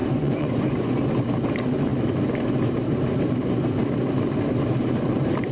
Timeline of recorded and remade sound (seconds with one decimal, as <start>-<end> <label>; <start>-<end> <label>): 0.0-1.1 remade; 1.1-5.5 recorded